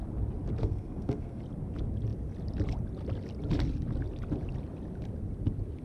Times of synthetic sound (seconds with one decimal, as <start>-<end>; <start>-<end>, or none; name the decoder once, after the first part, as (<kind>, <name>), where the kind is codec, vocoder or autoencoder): 0.6-1.4 (codec, SNAC)